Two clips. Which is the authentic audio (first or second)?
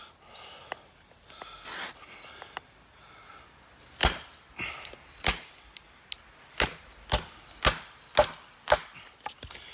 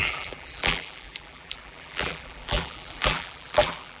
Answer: first